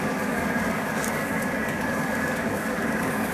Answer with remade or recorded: remade